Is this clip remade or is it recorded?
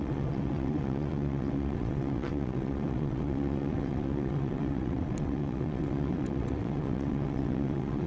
remade